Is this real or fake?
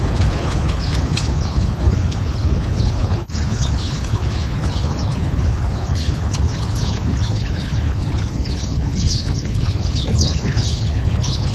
fake